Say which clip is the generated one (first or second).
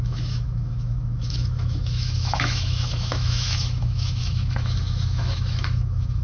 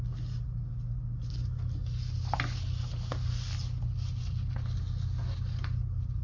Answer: first